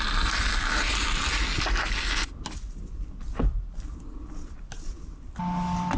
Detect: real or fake real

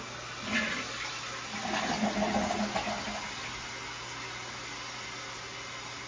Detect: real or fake real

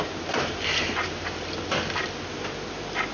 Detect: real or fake real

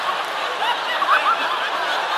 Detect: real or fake real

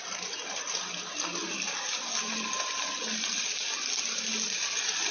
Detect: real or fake real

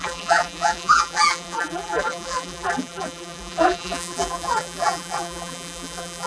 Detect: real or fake fake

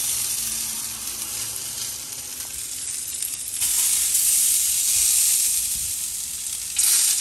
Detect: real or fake real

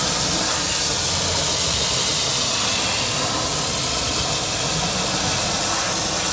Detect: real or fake real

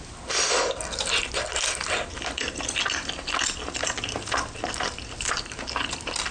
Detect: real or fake real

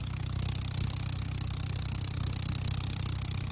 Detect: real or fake real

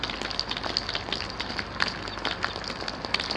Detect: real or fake real